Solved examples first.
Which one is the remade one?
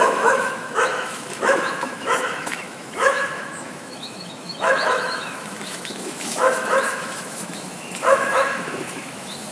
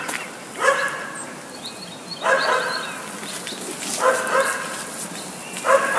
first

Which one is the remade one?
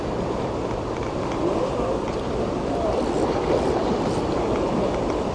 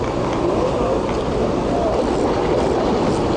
first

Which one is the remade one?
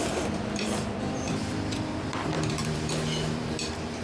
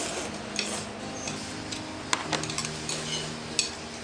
first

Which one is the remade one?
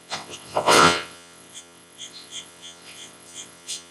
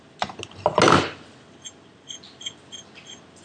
first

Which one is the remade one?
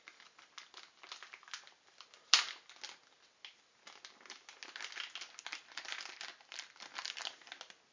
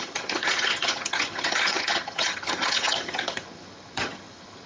second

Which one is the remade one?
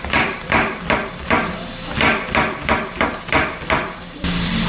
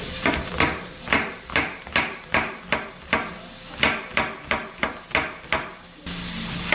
first